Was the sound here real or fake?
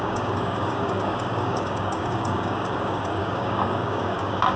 fake